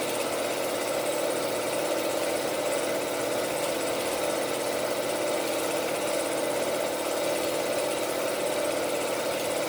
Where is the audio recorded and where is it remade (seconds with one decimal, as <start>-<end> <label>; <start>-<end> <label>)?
0.0-2.1 recorded; 2.1-2.8 remade; 2.8-9.7 recorded